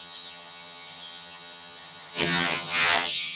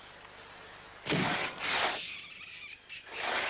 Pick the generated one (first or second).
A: first